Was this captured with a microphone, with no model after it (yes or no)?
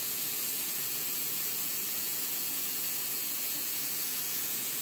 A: no